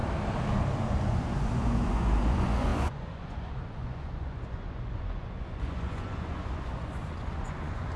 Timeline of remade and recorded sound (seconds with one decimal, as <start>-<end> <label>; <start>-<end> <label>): 0.0-0.9 recorded; 0.9-8.0 remade